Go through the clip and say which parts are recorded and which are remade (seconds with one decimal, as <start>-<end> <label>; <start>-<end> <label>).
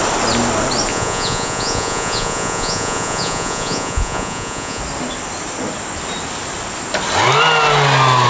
0.0-0.9 recorded; 0.9-4.8 remade; 4.8-8.3 recorded